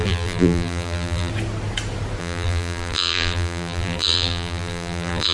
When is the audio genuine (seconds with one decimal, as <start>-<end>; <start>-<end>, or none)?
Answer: 1.3-2.2